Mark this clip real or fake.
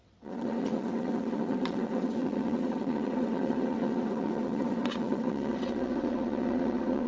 fake